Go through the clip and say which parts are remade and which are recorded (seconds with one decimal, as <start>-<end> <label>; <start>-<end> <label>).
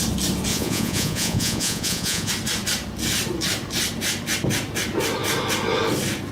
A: 0.0-0.5 recorded; 0.5-2.3 remade; 2.3-6.3 recorded